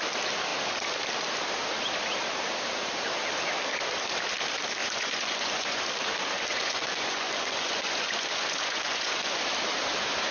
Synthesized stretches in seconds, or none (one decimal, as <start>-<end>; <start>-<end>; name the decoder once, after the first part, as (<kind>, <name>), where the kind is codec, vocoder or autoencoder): 4.8-5.8 (vocoder, Vocos); 6.5-9.4